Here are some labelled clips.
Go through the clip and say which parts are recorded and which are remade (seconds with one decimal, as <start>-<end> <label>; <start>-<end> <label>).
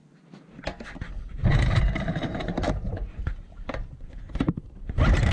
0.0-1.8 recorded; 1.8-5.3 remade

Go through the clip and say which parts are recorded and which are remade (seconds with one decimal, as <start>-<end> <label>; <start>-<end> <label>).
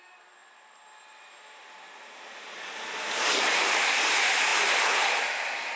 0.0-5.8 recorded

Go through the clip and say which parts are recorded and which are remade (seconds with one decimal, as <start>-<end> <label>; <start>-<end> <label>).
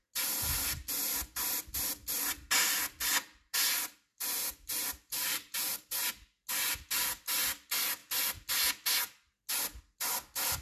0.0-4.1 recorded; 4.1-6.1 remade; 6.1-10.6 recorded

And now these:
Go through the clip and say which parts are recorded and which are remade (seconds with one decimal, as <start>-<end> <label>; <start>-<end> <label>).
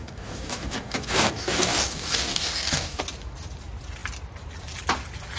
0.0-3.0 remade; 3.0-5.4 recorded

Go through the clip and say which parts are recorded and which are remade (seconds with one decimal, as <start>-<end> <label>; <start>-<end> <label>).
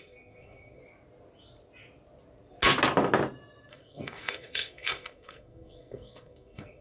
0.0-0.8 remade; 0.8-3.7 recorded; 3.7-6.8 remade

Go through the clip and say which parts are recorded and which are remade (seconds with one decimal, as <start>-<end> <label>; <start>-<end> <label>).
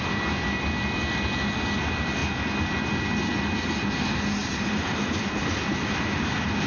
0.0-4.4 recorded; 4.4-5.5 remade; 5.5-6.7 recorded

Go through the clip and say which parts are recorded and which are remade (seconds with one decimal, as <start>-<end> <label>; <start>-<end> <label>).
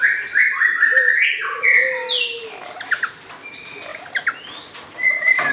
0.0-3.9 recorded; 3.9-5.5 remade